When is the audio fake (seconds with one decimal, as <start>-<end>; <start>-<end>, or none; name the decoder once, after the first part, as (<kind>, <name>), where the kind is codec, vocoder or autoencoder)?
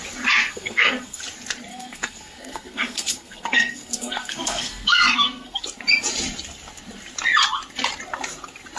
0.4-1.2 (codec, SNAC); 1.7-5.6